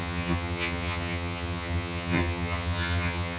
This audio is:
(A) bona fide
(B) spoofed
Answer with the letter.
B